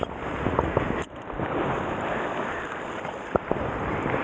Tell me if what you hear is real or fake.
real